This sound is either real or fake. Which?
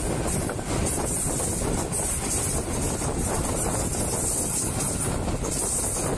real